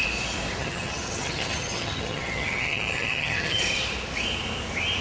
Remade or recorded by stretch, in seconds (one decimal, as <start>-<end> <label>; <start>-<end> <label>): 0.0-0.6 recorded; 0.6-3.6 remade; 3.6-5.0 recorded